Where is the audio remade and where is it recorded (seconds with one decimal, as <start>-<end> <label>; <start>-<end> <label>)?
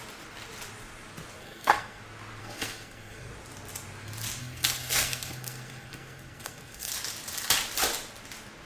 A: 0.0-1.4 recorded; 1.4-2.0 remade; 2.0-2.4 recorded; 2.4-3.3 remade; 3.3-4.4 recorded; 4.4-6.9 remade; 6.9-8.7 recorded